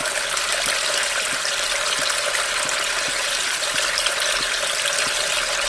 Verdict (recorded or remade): recorded